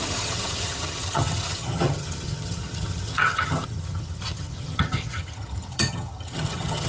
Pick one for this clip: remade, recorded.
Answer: remade